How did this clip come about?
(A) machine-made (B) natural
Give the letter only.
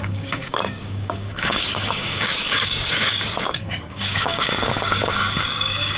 A